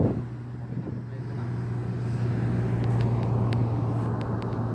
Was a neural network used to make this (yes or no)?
no